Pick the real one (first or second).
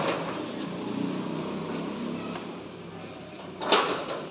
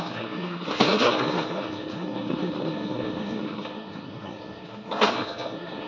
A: first